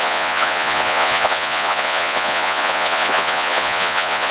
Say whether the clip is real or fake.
fake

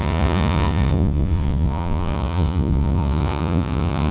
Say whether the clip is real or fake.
fake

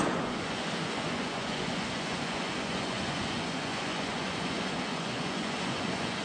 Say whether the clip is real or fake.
fake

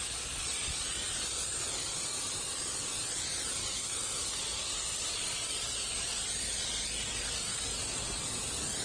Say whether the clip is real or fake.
real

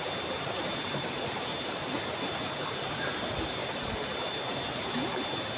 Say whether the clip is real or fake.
real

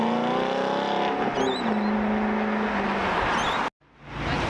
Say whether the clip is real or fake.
real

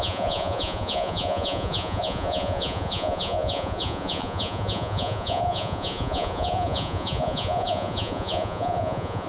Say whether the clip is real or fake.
fake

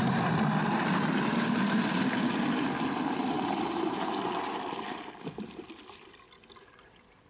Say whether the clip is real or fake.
real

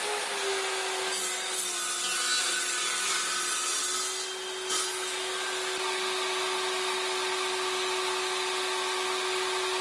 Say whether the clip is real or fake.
real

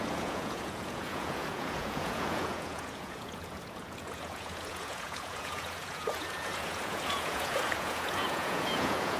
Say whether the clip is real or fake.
fake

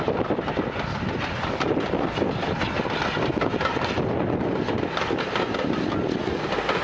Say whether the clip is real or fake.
real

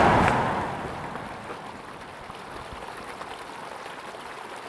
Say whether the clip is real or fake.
real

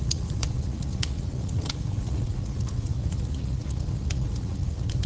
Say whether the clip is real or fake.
fake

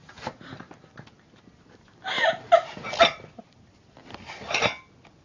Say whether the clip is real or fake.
real